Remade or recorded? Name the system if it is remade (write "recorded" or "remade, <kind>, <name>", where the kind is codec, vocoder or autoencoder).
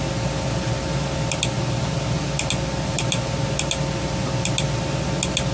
recorded